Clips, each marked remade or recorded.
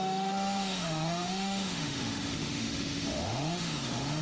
remade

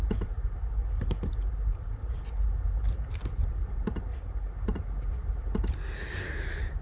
recorded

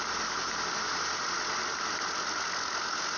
recorded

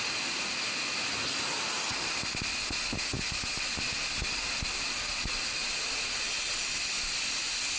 recorded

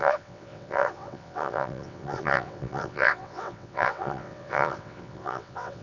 remade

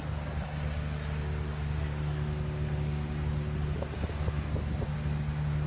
recorded